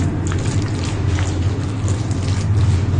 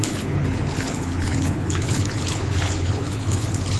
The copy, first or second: second